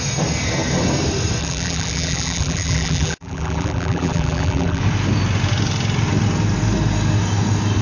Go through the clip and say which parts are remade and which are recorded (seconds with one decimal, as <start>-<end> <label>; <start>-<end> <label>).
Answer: 0.0-1.4 recorded; 1.4-4.8 remade; 4.8-7.8 recorded

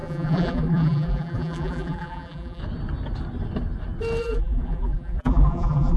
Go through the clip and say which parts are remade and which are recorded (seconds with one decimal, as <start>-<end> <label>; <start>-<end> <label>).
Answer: 0.0-2.6 remade; 2.6-4.2 recorded; 4.2-6.0 remade

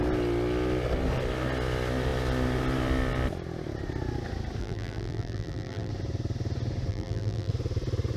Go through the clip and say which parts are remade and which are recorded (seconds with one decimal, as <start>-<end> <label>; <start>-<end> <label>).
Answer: 0.0-4.6 recorded; 4.6-5.9 remade; 5.9-6.9 recorded; 6.9-7.5 remade; 7.5-8.2 recorded

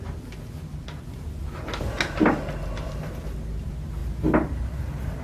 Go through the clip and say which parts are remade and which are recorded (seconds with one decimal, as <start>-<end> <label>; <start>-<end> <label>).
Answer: 0.0-5.2 recorded